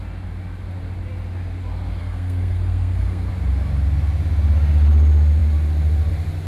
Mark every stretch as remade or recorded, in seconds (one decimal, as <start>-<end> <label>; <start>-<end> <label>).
0.0-2.0 recorded; 2.0-3.3 remade; 3.3-6.5 recorded